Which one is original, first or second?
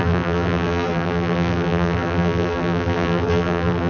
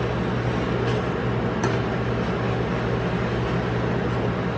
second